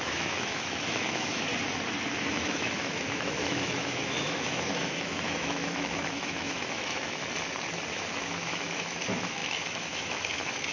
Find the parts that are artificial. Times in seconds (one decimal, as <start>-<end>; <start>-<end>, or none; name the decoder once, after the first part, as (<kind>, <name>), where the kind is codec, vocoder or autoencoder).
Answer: 0.0-1.5 (autoencoder, DAC-VAE); 2.3-7.2; 7.9-10.7